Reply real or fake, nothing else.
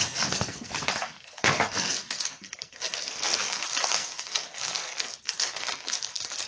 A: fake